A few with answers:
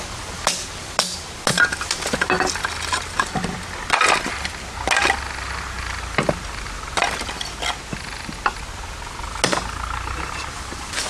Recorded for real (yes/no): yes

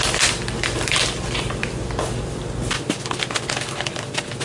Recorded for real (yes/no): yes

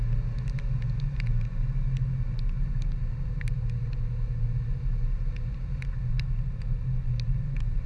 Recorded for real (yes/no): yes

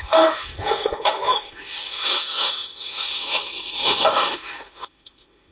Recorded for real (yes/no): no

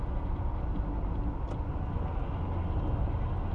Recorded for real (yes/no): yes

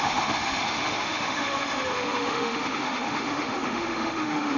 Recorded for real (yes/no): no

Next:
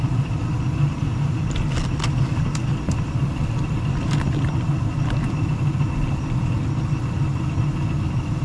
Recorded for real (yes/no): yes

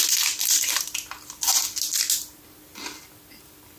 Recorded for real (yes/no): yes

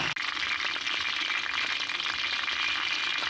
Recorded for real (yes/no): yes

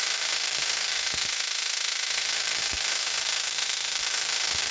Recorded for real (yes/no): no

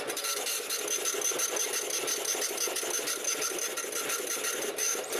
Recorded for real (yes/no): yes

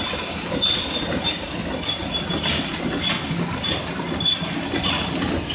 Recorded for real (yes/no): yes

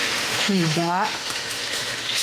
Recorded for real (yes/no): no